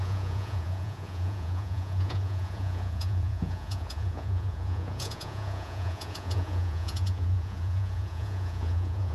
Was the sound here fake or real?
fake